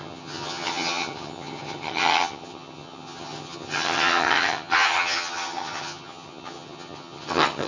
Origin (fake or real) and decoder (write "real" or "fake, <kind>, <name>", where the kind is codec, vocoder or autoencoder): fake, vocoder, HiFi-GAN